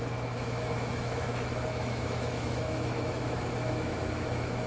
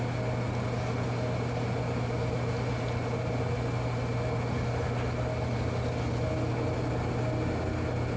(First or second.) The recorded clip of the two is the second